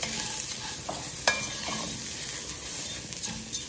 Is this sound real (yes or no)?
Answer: yes